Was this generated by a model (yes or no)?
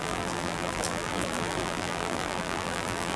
yes